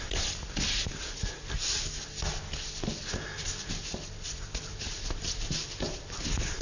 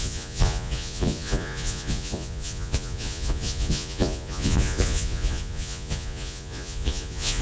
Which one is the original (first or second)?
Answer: first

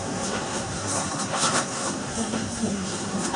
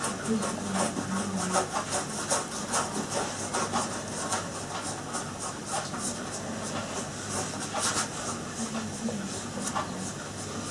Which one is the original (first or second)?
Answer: second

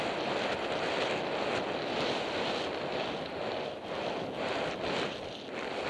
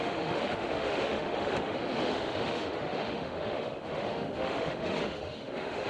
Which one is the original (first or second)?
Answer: first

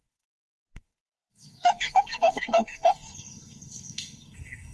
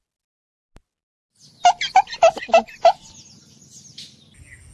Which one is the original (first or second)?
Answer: second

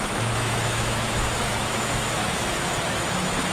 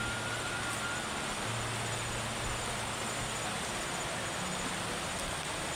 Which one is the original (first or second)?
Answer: second